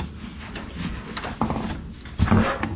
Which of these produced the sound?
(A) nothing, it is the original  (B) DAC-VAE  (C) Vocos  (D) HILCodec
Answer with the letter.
A